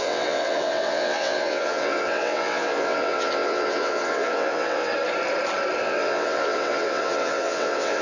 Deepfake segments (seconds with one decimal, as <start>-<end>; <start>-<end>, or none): 0.0-4.9; 5.8-8.0